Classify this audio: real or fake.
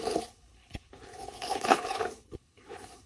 fake